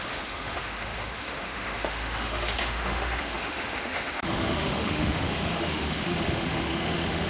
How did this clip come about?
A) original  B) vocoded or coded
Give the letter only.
B